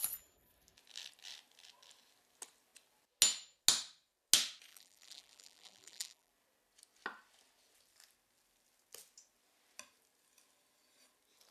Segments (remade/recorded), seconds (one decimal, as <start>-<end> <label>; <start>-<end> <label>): 0.0-4.7 recorded; 4.7-6.3 remade; 6.3-11.5 recorded